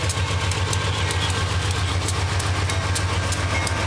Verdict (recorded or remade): recorded